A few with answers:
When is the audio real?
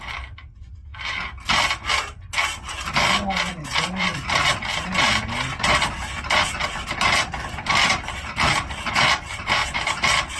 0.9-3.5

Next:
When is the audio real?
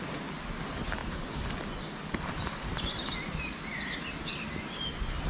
0.0-5.3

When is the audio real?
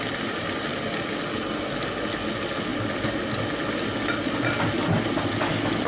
0.0-0.7; 1.7-5.9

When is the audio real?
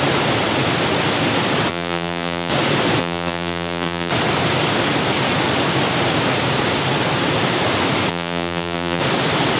0.0-1.7; 2.5-3.0; 4.1-8.1; 9.0-9.6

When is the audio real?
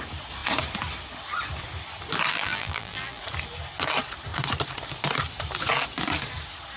0.0-2.3; 3.2-6.8